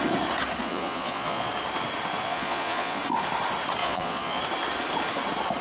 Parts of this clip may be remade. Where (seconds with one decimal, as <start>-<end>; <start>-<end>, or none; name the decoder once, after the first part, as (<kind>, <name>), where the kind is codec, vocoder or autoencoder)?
0.6-1.5 (vocoder, Vocos); 2.2-3.0; 3.8-4.4